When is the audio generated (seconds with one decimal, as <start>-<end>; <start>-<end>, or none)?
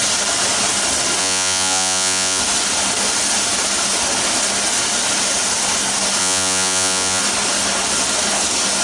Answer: 1.2-2.4; 6.2-7.2